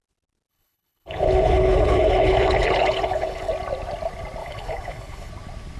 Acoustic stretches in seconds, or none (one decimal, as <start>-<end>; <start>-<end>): 0.0-0.5; 3.5-4.4; 5.3-5.8